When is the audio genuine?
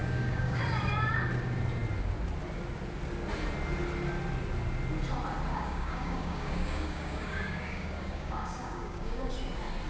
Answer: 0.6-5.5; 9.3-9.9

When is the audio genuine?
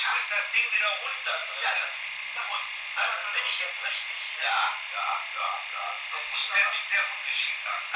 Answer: 0.0-1.4; 4.1-8.0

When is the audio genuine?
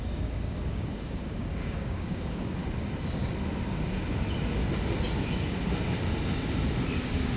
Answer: 2.6-7.0